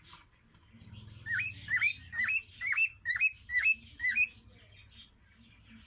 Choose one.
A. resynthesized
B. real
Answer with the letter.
B